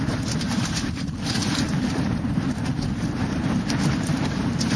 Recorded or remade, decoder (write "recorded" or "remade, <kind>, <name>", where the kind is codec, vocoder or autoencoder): remade, vocoder, BigVGAN v2